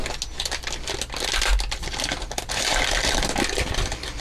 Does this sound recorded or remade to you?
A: recorded